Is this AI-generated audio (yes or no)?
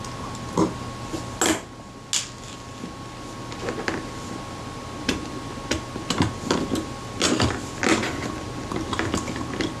no